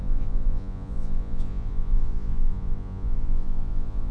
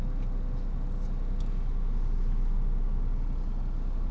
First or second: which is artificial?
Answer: first